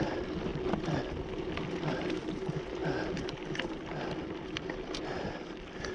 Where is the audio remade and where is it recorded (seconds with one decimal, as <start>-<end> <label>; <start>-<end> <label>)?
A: 0.0-5.9 recorded